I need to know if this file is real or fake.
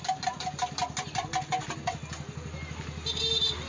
real